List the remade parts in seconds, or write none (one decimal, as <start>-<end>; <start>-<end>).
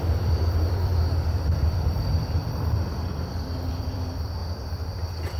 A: 0.0-4.4